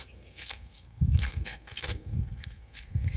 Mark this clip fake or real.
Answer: fake